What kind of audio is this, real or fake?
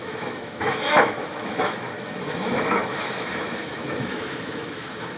fake